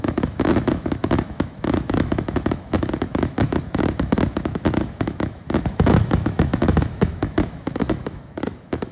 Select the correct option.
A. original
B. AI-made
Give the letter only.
B